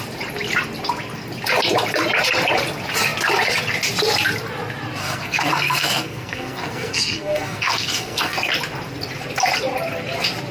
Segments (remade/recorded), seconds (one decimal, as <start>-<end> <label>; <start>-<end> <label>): 0.0-5.0 recorded; 5.0-8.5 remade; 8.5-10.5 recorded